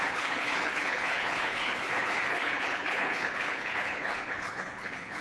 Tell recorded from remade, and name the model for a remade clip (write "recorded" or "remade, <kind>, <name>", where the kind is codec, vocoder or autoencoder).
remade, codec, HILCodec